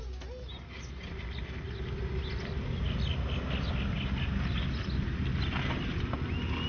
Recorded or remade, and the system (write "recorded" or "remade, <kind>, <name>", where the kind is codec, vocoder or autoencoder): recorded